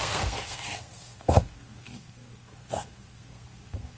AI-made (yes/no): yes